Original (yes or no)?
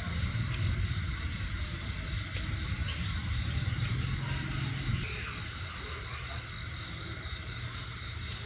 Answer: yes